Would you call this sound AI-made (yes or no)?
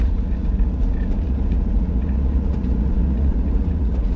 yes